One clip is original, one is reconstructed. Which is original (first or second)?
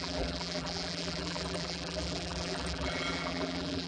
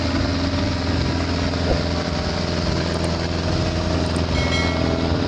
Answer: second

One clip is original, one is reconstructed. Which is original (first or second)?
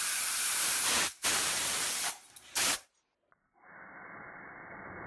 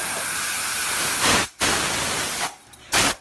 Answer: second